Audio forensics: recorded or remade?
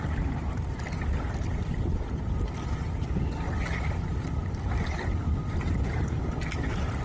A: recorded